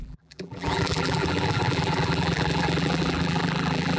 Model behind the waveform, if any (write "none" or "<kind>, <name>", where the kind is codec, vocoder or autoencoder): vocoder, BigVGAN v2